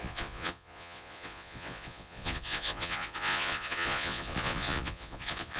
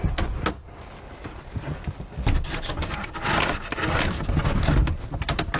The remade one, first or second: first